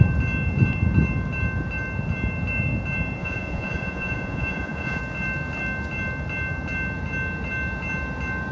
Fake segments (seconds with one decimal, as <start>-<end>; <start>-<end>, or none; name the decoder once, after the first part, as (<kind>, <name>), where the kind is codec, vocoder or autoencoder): 3.2-5.0 (vocoder, Vocos)